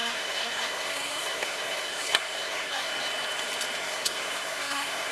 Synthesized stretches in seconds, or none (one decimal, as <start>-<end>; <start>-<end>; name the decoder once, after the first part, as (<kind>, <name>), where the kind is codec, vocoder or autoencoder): 0.0-2.9 (codec, SNAC); 3.8-5.1